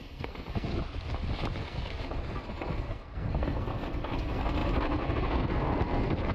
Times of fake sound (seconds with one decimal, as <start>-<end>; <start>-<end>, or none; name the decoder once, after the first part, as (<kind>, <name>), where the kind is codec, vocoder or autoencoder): 0.0-0.7 (codec, SNAC); 1.6-6.3